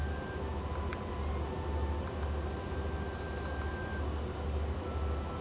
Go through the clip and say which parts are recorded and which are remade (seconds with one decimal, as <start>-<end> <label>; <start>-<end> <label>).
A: 0.0-5.4 recorded